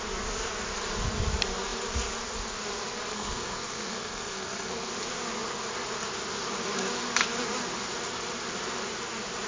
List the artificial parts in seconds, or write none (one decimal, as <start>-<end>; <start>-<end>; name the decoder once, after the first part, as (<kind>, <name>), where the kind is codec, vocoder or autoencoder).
3.1-4.9 (codec, SNAC)